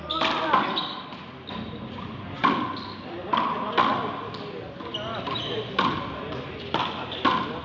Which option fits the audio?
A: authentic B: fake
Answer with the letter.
A